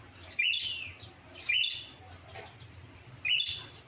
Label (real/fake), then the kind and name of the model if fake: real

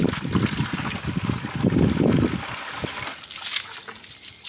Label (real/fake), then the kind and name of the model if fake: real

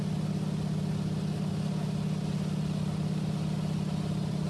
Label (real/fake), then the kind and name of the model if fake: real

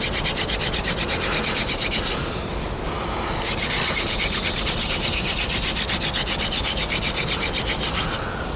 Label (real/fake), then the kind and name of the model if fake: real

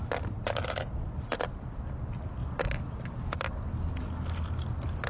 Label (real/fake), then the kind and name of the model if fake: real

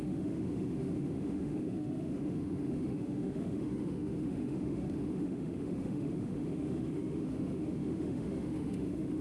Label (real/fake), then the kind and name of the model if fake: fake, autoencoder, DAC-VAE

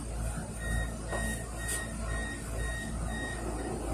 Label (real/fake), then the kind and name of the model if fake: real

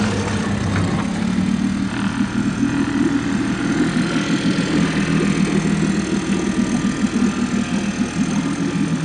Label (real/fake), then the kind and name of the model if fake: real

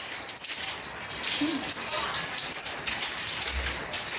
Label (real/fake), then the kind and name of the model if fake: real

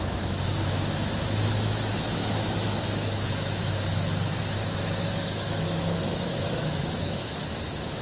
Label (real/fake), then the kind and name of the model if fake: fake, autoencoder, DAC-VAE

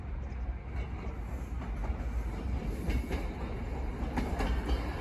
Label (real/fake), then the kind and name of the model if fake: real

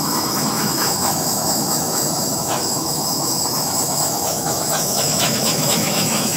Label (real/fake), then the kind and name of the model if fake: fake, autoencoder, DAC-VAE